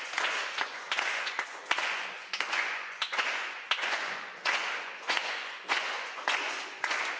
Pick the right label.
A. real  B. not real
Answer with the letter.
B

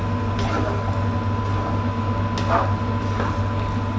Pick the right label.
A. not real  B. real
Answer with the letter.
B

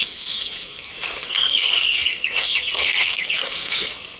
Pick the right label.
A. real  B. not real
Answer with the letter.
B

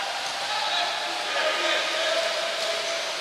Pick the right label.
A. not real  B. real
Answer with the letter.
B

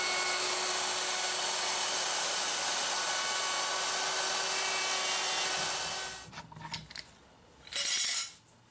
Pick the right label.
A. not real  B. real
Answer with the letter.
B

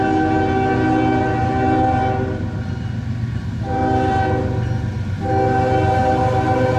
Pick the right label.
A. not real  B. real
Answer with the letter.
B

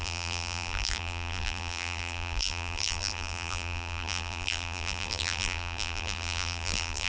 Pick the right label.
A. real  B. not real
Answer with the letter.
B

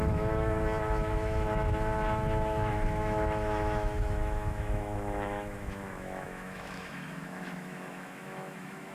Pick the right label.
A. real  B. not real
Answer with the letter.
B